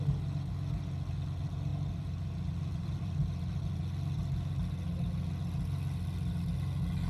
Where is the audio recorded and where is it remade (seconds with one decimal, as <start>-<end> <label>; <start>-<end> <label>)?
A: 0.0-1.7 recorded; 1.7-3.6 remade; 3.6-7.1 recorded